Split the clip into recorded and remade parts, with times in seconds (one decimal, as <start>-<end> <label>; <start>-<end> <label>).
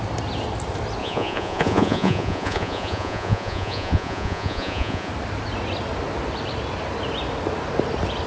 0.0-1.0 recorded; 1.0-5.1 remade; 5.1-8.3 recorded